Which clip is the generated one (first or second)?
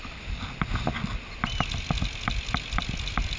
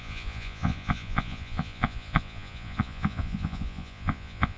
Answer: second